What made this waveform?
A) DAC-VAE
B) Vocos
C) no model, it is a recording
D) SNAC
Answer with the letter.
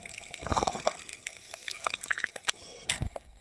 D